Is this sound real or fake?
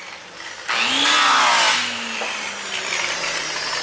real